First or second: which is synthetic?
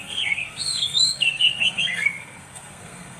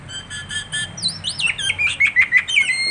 first